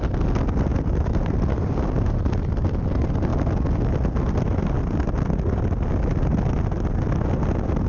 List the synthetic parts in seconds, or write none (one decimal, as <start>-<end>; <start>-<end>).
0.7-2.6